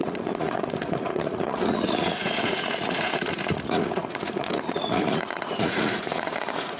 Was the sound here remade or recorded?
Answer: remade